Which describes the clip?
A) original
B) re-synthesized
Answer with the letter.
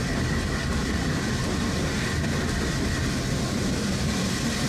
A